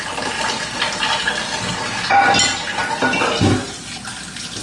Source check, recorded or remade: recorded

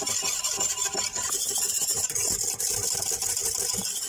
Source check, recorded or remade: recorded